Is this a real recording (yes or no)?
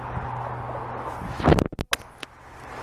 yes